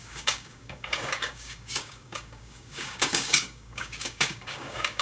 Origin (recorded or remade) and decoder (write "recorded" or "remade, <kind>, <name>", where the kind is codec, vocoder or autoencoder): remade, codec, DAC